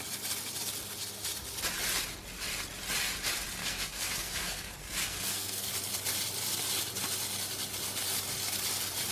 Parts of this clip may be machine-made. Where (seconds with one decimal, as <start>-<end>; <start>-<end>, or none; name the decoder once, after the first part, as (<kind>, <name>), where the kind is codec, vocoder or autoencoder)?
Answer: 3.6-5.7 (codec, SNAC)